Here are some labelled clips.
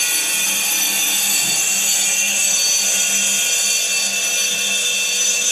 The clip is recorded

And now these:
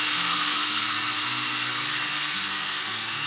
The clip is remade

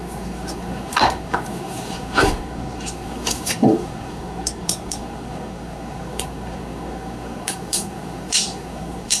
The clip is remade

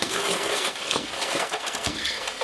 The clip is remade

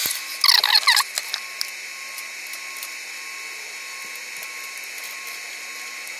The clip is recorded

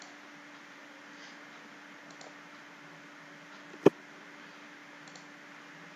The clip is recorded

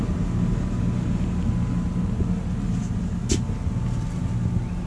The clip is recorded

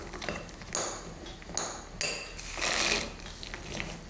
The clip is recorded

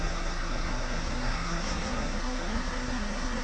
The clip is remade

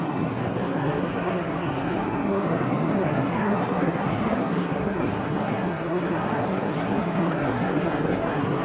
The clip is remade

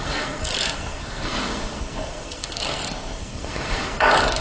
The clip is remade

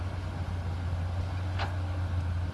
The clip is recorded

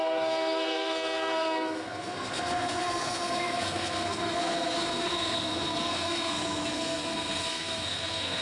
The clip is remade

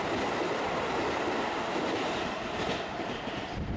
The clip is recorded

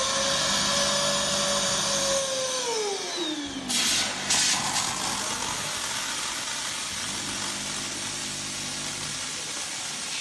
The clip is recorded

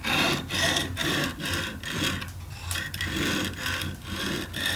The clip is recorded